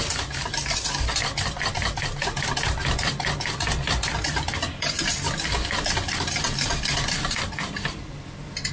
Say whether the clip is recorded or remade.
recorded